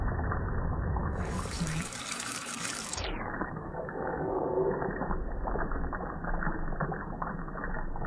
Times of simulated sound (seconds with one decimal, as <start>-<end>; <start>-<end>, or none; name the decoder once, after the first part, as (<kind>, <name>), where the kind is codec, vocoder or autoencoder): 1.0-4.4 (codec, DAC)

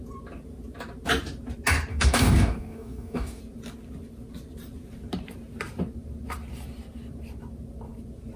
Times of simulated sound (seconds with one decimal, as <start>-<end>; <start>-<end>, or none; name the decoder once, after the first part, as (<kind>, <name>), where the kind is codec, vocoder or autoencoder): 1.9-3.4 (codec, DAC)

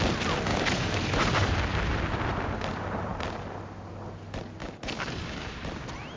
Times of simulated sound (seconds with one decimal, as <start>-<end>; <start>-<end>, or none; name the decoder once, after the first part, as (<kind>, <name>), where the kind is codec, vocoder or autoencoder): 0.5-1.5 (codec, DAC); 4.6-5.6

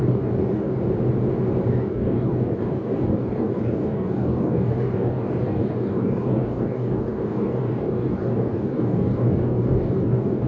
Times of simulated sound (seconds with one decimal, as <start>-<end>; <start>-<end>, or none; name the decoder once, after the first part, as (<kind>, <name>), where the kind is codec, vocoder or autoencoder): 0.0-0.8 (codec, DAC); 1.7-10.5

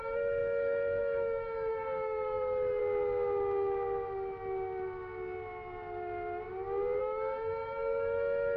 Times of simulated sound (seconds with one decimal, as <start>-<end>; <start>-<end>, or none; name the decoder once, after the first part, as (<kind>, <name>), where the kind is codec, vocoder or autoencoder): 0.0-2.8 (codec, DAC); 7.0-8.6